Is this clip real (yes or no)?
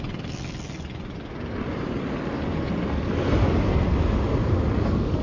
yes